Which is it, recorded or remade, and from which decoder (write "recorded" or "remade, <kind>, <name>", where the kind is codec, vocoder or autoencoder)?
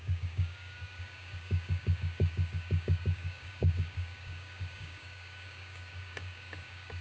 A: remade, codec, DAC